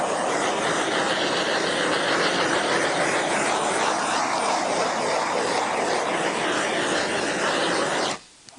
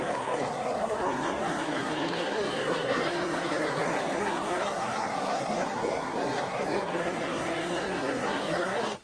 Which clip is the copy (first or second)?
second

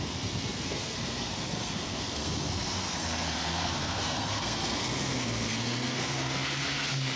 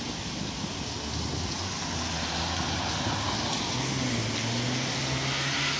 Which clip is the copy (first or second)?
first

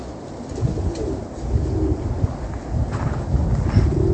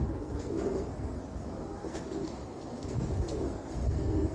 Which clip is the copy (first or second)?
second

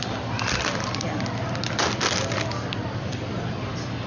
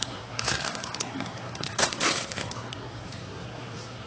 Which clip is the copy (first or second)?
second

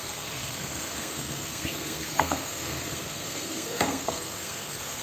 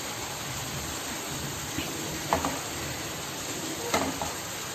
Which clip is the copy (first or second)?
first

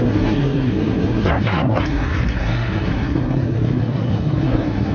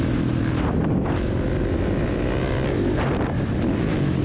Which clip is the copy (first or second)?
first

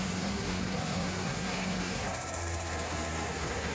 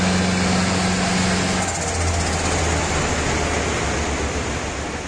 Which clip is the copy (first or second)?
first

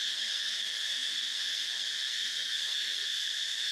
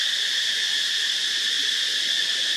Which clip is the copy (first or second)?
first